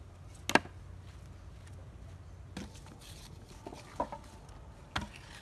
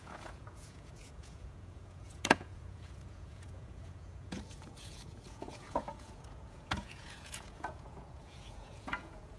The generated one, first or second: second